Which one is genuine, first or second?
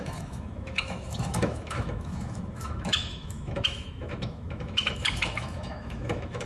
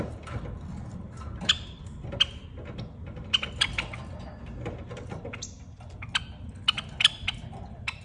second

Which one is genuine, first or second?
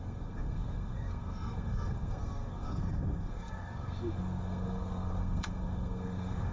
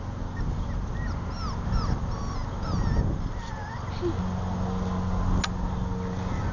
second